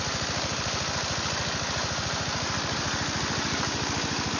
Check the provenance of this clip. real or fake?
real